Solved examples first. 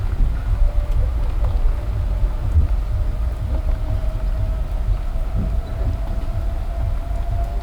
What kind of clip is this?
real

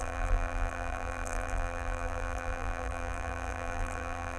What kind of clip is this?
fake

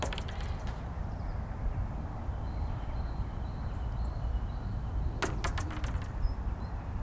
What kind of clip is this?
real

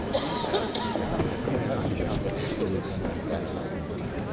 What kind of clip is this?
real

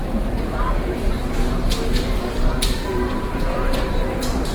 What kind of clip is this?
fake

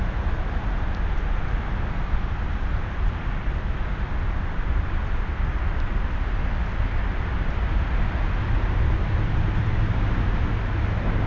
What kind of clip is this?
real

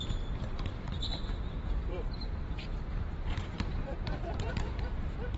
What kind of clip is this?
fake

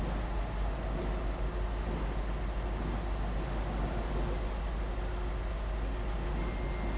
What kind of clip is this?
real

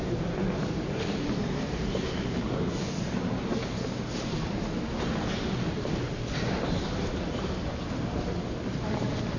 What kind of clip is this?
fake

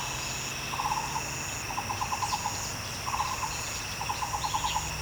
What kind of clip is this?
real